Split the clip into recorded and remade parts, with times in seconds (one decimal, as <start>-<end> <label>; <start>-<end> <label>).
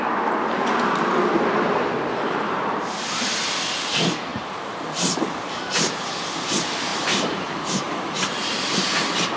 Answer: 0.0-1.7 recorded; 1.7-3.4 remade; 3.4-4.3 recorded; 4.3-6.4 remade; 6.4-6.9 recorded; 6.9-8.0 remade; 8.0-9.4 recorded